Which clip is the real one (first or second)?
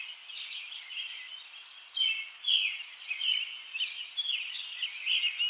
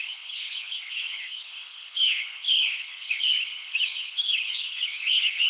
first